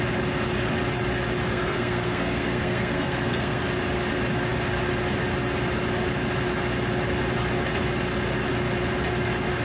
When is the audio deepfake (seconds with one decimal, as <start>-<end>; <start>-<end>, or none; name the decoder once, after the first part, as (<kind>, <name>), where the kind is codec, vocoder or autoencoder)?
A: 1.5-3.6 (codec, SNAC)